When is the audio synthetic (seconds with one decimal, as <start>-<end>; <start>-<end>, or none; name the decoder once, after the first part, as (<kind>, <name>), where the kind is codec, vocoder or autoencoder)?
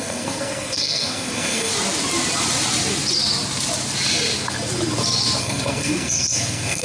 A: 0.0-1.7 (codec, SNAC); 5.4-6.8